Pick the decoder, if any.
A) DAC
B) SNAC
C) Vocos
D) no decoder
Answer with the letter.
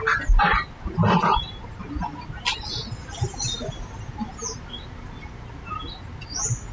D